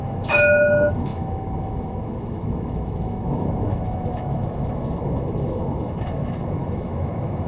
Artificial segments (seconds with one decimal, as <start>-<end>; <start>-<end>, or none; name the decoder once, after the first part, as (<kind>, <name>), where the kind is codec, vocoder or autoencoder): 0.0-7.5 (autoencoder, DAC-VAE)